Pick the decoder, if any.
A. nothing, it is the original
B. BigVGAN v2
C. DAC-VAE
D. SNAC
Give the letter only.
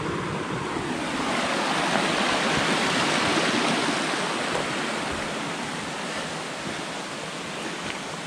A